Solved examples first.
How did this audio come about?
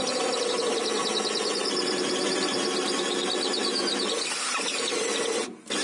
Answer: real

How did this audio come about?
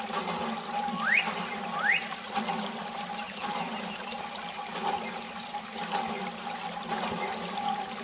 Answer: real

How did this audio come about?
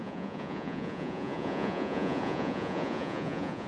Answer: fake